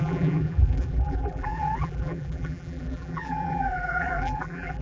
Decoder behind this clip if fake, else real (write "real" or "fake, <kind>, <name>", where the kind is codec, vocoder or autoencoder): fake, vocoder, BigVGAN v2